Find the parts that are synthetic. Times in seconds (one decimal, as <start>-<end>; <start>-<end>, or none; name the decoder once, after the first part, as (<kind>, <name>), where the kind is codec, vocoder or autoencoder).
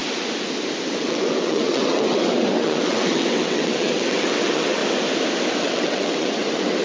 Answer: 0.9-4.8 (vocoder, WaveNeXt); 5.5-6.8